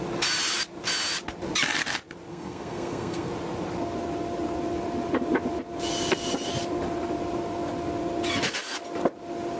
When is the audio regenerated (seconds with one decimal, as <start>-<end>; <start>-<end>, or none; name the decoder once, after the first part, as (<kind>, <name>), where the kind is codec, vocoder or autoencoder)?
2.3-3.3 (codec, SNAC)